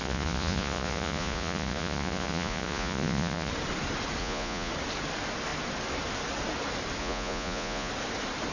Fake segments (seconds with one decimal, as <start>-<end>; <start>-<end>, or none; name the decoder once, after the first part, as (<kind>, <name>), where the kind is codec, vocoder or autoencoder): 0.0-3.5 (vocoder, Vocos); 4.2-4.7; 7.0-7.9